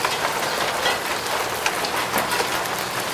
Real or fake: real